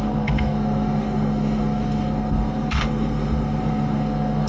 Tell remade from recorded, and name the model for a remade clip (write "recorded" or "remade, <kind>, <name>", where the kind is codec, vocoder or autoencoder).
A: remade, codec, SNAC